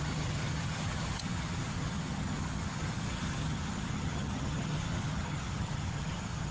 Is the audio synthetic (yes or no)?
yes